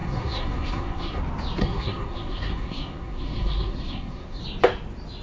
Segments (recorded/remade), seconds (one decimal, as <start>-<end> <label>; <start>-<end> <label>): 0.0-1.2 remade; 1.2-1.6 recorded; 1.6-4.4 remade; 4.4-5.2 recorded

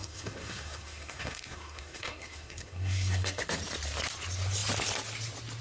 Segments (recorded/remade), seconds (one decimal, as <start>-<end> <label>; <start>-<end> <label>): 0.0-3.4 remade; 3.4-5.6 recorded